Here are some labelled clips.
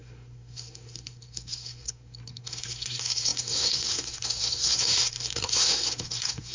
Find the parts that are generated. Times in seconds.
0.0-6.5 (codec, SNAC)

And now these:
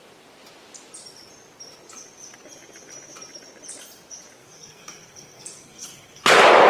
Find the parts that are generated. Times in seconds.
4.4-6.3 (codec, SNAC)

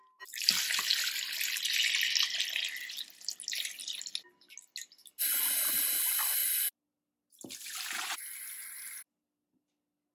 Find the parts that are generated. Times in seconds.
none

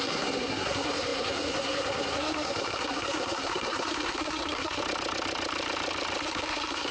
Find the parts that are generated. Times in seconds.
0.0-4.8 (codec, SNAC); 6.2-6.9

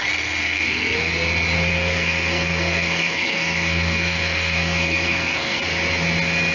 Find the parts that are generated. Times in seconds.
0.4-1.1 (codec, SNAC); 1.7-5.6

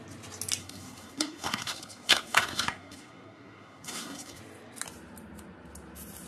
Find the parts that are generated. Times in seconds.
0.6-4.4 (codec, SNAC)